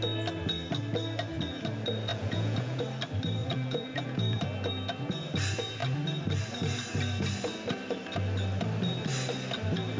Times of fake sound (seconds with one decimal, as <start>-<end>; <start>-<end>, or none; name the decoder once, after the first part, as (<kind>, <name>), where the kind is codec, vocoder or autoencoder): 2.1-2.8 (vocoder, Vocos); 3.4-4.4